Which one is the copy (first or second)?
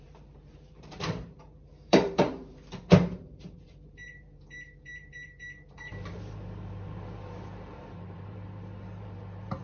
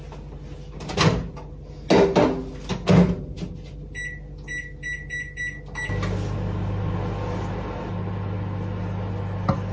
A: first